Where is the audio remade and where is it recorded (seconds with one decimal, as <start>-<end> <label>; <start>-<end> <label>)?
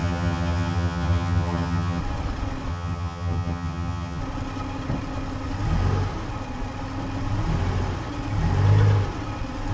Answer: 0.0-2.0 remade; 2.0-2.7 recorded; 2.7-4.2 remade; 4.2-9.7 recorded